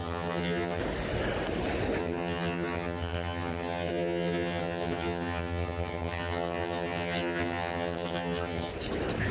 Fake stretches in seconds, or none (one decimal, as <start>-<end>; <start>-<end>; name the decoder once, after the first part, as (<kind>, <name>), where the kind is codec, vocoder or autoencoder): 0.0-0.8 (vocoder, HiFi-GAN); 2.0-8.7